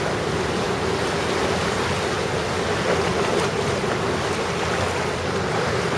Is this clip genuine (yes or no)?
yes